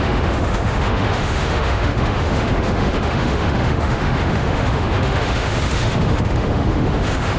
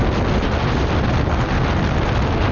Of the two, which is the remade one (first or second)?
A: first